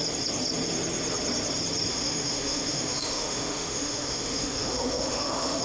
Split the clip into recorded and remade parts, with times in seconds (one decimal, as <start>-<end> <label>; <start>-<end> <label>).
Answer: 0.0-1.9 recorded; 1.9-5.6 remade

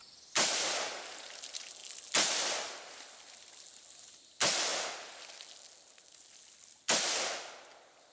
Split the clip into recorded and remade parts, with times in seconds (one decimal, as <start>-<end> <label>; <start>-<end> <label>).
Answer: 0.0-8.1 recorded

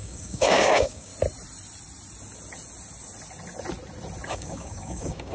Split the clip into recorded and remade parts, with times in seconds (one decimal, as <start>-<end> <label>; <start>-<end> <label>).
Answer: 0.0-1.1 remade; 1.1-4.3 recorded; 4.3-5.3 remade

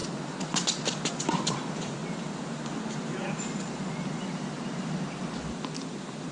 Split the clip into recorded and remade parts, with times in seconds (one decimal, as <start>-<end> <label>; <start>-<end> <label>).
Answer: 0.0-1.1 recorded; 1.1-2.0 remade; 2.0-4.0 recorded; 4.0-6.3 remade